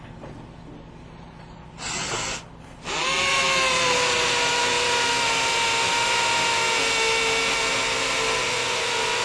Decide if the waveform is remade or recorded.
recorded